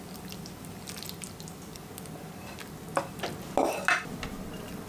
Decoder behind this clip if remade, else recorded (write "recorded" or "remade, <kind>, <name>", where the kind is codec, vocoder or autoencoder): recorded